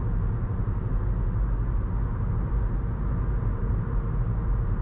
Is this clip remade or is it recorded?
recorded